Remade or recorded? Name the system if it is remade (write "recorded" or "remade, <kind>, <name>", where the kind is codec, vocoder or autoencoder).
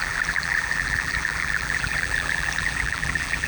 remade, vocoder, BigVGAN v2